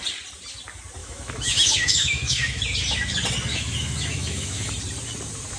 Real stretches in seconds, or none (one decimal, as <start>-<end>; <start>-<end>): 0.0-1.0; 2.6-3.5; 4.7-5.6